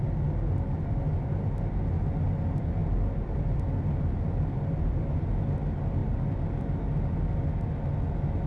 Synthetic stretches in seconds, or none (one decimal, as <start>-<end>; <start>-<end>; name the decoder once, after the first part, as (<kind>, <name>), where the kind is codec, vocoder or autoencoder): 2.8-5.0 (vocoder, BigVGAN v2)

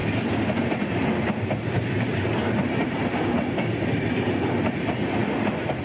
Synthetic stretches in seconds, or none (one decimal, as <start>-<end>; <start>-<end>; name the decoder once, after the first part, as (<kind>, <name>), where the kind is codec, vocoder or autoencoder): none

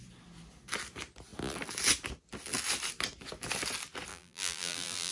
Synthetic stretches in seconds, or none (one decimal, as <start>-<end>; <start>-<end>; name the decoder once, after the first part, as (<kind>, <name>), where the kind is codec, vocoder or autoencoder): 4.1-5.1 (vocoder, BigVGAN v2)

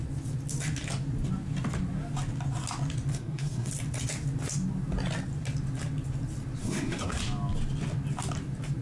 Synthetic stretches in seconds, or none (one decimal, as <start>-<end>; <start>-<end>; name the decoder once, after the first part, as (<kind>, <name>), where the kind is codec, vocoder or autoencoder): 3.1-3.7 (codec, SNAC); 6.6-7.2

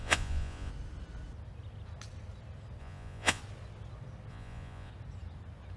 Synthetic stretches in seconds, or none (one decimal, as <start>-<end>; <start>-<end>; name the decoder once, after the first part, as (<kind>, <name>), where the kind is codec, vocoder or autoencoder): 0.0-0.7 (vocoder, Vocos); 2.8-3.4; 4.3-4.9

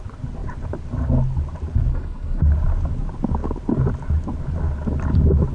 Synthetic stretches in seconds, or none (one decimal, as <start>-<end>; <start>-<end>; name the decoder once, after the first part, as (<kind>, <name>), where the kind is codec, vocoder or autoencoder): 1.9-2.4 (codec, SNAC)

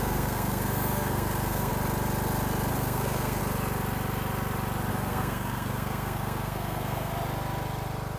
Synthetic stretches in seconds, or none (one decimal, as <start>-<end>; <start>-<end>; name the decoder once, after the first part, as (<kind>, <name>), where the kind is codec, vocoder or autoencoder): 0.0-1.7 (codec, SNAC); 2.7-3.4; 4.9-7.1

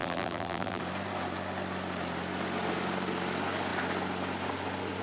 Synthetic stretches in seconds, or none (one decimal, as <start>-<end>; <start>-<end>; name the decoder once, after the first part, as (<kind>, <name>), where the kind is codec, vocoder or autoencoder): 0.0-0.8 (vocoder, BigVGAN v2)